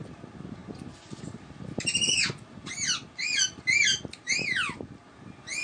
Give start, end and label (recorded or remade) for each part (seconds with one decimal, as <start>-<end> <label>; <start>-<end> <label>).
0.0-5.6 recorded